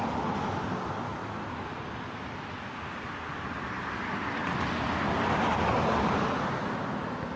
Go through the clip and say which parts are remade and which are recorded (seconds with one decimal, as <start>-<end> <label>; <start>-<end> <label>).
0.0-7.4 recorded